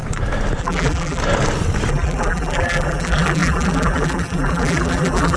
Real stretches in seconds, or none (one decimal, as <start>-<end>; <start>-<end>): 0.0-0.6; 1.2-1.9

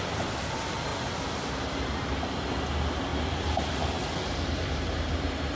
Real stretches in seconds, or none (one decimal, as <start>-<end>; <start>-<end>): 0.0-3.1; 3.7-4.5